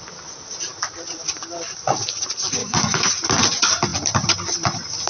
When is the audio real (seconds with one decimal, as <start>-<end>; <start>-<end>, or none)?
0.0-2.6; 3.1-5.1